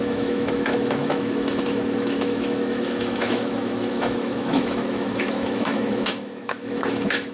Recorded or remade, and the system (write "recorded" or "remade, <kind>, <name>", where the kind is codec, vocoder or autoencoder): remade, autoencoder, DAC-VAE